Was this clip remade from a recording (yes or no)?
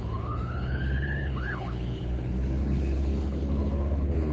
yes